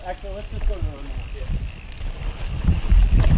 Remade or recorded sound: recorded